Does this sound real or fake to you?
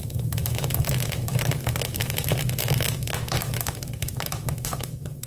fake